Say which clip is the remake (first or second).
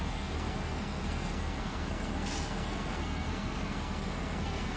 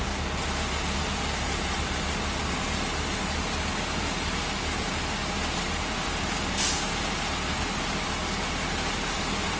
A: first